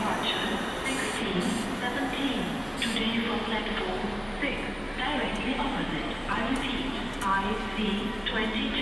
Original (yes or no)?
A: yes